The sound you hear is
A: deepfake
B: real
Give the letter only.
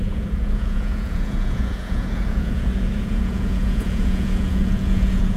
A